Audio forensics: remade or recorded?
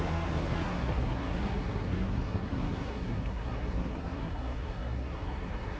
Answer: remade